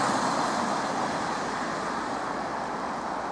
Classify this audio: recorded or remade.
recorded